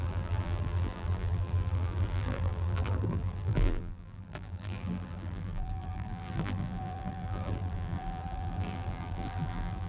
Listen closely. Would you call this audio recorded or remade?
remade